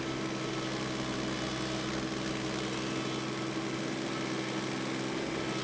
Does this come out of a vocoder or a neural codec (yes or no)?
no